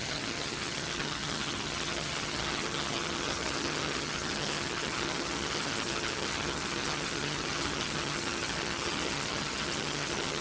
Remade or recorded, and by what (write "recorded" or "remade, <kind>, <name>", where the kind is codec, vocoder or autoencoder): remade, vocoder, HiFi-GAN